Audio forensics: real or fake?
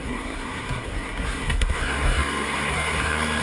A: fake